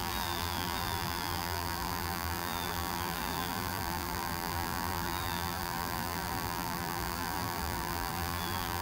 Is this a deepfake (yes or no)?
yes